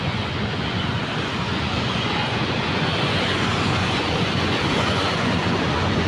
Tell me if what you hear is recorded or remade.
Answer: remade